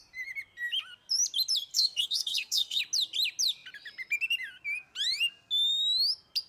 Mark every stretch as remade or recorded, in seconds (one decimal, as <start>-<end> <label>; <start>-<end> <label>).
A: 0.0-1.7 recorded; 1.7-2.8 remade; 2.8-6.5 recorded